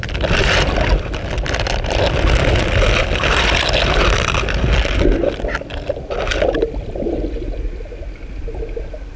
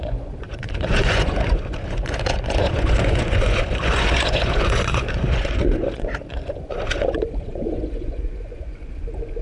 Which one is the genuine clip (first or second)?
first